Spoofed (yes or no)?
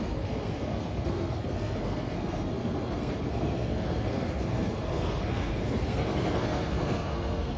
yes